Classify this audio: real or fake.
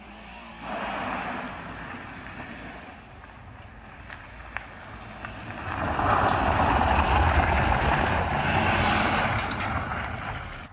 real